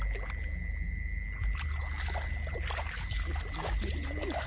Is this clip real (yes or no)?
yes